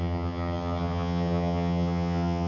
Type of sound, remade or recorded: remade